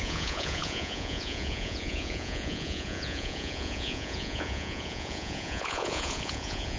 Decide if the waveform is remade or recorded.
remade